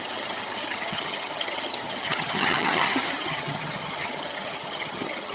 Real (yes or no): no